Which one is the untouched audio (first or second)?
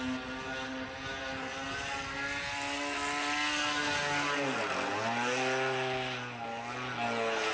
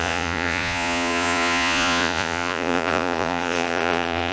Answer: first